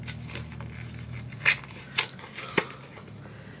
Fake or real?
real